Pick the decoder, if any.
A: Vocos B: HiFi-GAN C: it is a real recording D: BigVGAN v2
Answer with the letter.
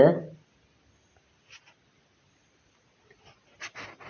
C